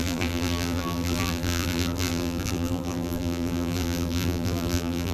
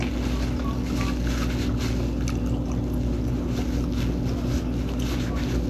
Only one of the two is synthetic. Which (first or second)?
first